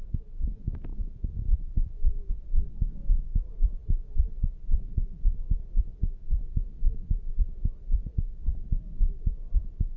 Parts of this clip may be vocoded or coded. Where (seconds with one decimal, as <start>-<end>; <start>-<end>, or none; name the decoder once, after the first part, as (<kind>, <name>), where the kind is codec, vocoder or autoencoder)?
0.9-2.3 (autoencoder, DAC-VAE)